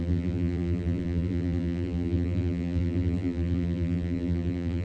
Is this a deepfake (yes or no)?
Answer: yes